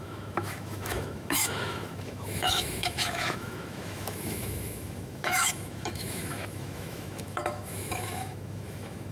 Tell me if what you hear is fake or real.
fake